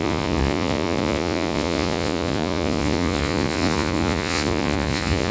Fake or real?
fake